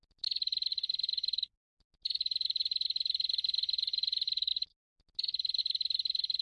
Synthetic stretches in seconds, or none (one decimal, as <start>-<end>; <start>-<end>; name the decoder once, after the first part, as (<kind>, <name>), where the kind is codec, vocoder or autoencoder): 0.7-1.4 (vocoder, BigVGAN v2)